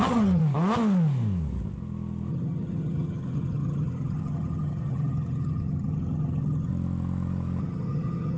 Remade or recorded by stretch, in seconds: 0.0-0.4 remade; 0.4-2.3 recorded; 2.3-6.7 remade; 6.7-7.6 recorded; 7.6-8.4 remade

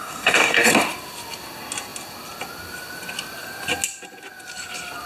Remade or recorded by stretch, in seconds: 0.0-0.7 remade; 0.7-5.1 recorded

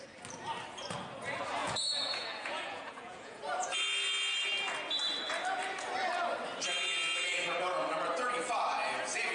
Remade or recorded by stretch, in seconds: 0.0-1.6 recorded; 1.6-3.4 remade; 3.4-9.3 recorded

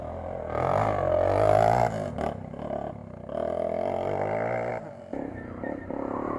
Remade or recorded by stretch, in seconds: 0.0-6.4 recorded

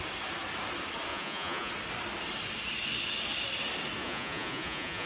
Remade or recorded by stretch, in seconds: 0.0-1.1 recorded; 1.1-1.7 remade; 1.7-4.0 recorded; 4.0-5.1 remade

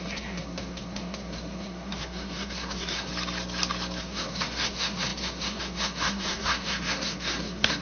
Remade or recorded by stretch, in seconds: 0.0-3.1 remade; 3.1-4.0 recorded; 4.0-7.8 remade

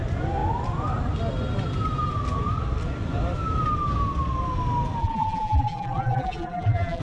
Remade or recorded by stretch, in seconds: 0.0-5.0 recorded; 5.0-7.0 remade